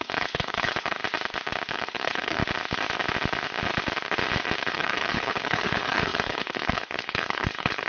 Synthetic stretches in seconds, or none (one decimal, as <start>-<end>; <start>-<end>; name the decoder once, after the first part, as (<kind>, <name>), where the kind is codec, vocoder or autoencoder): 0.0-1.0 (codec, HILCodec); 1.7-2.4; 4.7-7.9